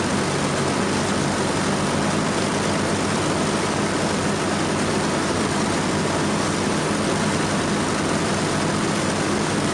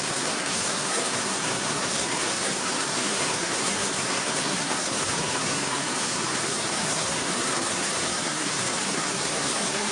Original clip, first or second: first